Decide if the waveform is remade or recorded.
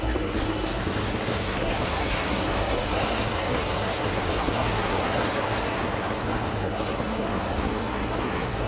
remade